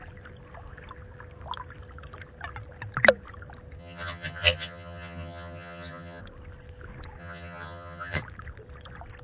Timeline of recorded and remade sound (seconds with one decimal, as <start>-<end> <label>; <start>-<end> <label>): 0.0-3.8 recorded; 3.8-6.2 remade; 6.2-7.2 recorded; 7.2-8.2 remade; 8.2-9.2 recorded